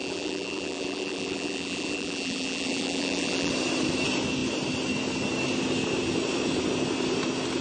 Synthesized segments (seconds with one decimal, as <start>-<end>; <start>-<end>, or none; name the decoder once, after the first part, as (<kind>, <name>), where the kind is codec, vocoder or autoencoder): 0.0-3.5 (vocoder, BigVGAN v2)

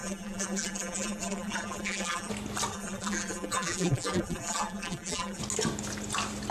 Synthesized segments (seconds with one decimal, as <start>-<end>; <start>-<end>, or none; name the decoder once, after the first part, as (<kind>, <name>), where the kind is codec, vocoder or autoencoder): 0.0-2.3 (vocoder, BigVGAN v2); 2.7-5.4

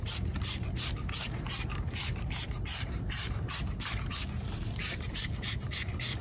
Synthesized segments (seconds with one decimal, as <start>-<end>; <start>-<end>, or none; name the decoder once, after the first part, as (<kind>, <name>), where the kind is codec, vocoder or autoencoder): 0.0-6.2 (vocoder, BigVGAN v2)

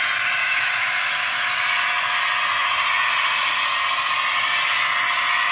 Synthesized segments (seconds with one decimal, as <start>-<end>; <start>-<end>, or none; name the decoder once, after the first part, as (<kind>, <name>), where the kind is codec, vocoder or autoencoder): 0.4-1.5 (autoencoder, DAC-VAE)

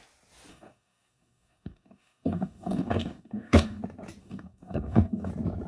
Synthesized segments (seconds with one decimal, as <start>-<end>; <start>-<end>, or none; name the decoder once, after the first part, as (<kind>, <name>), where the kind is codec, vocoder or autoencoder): 0.5-3.8 (codec, DAC); 4.2-5.3

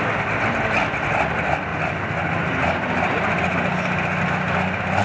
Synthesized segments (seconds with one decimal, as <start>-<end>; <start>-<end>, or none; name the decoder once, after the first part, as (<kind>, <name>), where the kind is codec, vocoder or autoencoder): none

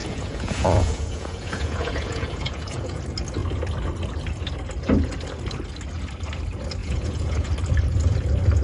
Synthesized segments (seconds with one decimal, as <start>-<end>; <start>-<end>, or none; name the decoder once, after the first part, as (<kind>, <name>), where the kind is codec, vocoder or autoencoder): 0.0-3.0 (vocoder, Vocos); 6.8-7.5